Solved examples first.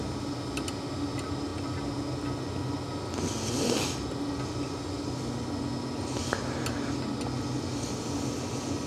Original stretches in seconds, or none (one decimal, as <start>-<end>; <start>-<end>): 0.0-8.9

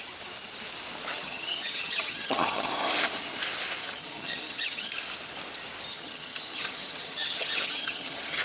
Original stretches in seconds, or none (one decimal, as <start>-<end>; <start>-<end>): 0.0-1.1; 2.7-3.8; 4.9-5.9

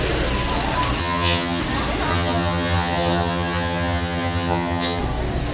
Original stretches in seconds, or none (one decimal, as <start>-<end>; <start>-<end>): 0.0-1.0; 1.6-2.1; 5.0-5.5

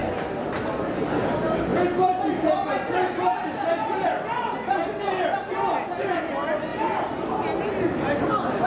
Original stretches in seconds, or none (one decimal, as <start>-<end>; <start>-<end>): 0.0-1.7; 6.2-6.7; 7.3-8.7